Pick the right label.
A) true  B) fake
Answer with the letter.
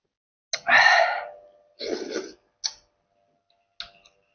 A